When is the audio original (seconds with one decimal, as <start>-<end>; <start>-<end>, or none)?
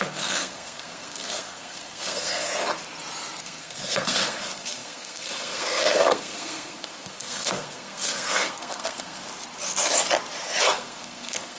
2.5-3.4; 9.3-10.6